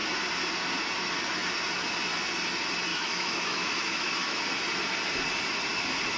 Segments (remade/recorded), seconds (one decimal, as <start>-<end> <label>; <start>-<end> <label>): 0.0-2.9 recorded; 2.9-4.4 remade; 4.4-6.2 recorded